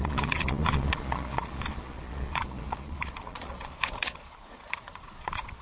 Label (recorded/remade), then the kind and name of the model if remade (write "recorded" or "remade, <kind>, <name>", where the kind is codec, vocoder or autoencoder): remade, vocoder, Vocos